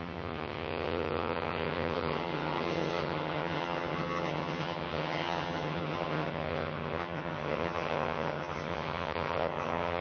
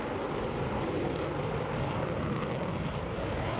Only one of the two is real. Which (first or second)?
second